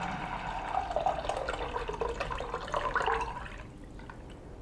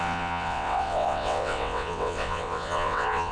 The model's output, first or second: second